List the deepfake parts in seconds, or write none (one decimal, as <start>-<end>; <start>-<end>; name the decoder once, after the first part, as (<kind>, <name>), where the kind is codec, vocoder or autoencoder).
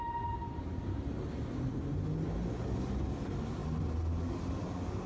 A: none